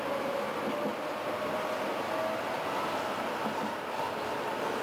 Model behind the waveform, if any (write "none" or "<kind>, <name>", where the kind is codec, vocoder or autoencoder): none